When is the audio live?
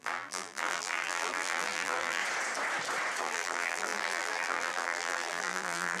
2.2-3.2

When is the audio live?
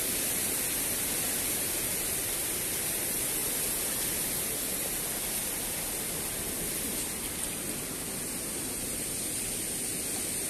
0.0-10.5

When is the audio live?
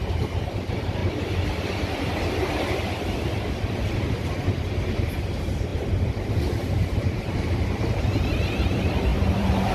1.0-3.9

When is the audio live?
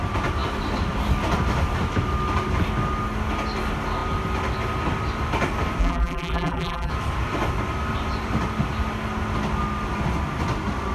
0.0-5.8; 6.9-10.9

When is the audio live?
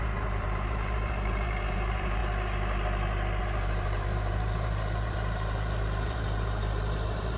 2.2-3.4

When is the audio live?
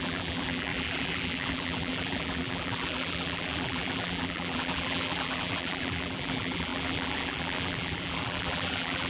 none